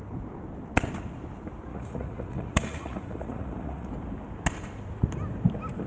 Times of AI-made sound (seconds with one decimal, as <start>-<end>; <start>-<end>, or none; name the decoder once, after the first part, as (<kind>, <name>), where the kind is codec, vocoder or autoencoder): 1.7-3.9 (vocoder, Vocos)